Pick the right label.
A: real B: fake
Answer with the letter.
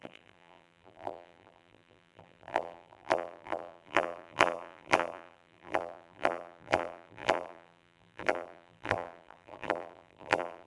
B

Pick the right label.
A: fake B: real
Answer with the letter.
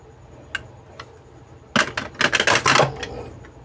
B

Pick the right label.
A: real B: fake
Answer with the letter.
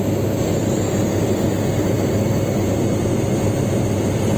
A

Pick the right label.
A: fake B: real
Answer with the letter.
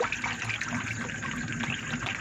B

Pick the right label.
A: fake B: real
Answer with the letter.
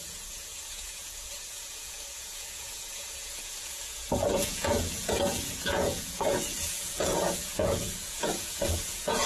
A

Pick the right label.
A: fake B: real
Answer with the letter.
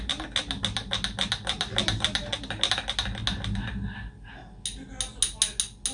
B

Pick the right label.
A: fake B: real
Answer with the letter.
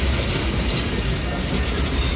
B